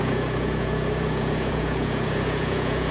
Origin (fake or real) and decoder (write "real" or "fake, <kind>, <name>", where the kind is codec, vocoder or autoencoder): fake, vocoder, Vocos